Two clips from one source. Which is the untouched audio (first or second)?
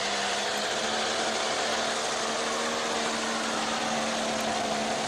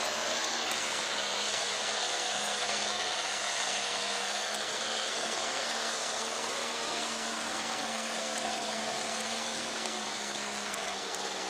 first